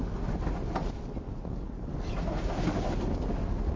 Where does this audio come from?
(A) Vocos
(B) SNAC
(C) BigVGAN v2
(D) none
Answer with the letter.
D